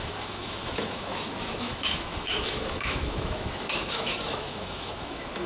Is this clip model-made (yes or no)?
yes